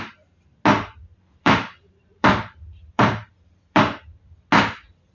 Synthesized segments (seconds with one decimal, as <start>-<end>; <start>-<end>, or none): 1.1-4.2